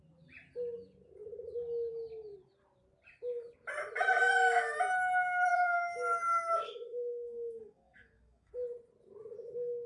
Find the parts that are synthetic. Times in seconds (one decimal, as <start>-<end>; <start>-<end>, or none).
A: 5.5-8.5